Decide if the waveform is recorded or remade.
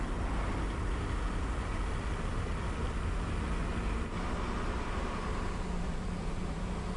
recorded